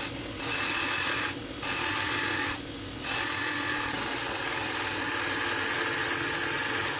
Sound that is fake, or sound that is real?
real